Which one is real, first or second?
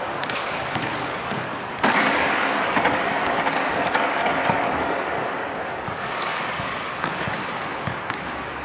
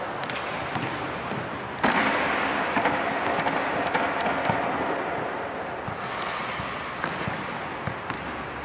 second